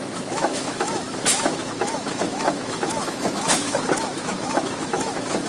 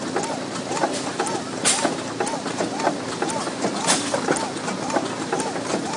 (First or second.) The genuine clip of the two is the second